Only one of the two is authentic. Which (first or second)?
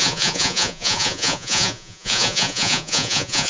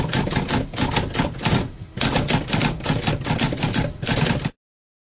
second